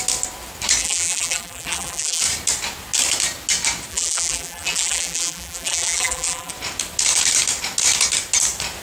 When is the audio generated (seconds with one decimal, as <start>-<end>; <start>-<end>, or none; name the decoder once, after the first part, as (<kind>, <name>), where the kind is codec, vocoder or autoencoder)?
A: 0.8-2.2 (vocoder, BigVGAN v2); 3.9-6.5